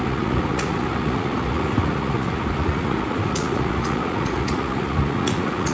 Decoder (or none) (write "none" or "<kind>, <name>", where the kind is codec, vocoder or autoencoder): vocoder, Vocos